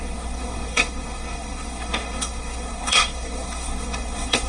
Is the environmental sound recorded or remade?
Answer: remade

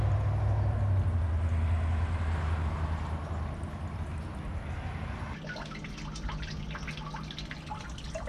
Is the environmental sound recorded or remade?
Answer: recorded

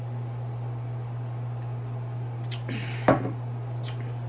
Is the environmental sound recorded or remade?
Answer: recorded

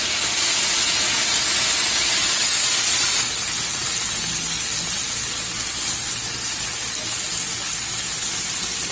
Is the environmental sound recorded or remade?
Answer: recorded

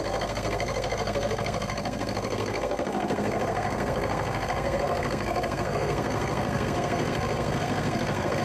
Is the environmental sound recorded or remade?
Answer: remade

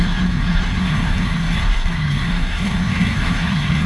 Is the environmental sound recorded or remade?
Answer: remade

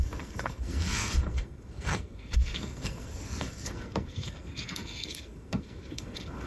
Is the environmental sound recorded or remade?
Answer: remade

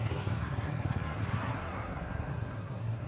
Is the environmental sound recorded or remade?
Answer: remade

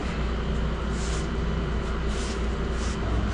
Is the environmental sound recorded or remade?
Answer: recorded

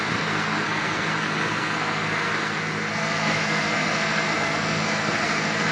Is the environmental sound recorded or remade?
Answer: remade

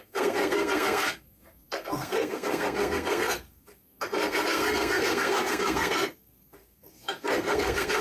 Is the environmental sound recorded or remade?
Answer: remade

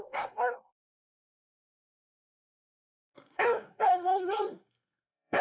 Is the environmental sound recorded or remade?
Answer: remade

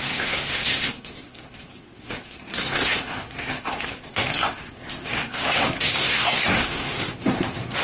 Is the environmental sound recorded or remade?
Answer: remade